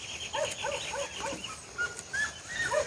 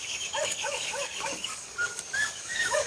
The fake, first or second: second